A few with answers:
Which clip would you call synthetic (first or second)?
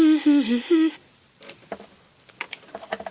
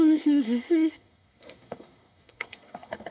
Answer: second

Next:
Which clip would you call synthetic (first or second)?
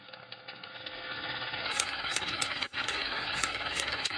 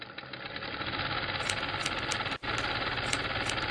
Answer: first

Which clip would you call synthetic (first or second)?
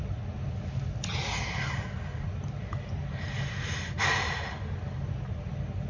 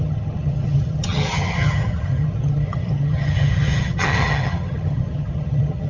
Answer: second